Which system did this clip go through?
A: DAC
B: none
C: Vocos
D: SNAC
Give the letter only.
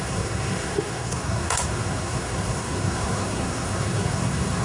D